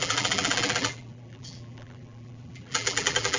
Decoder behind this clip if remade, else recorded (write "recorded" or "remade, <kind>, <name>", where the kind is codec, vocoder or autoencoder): remade, vocoder, BigVGAN v2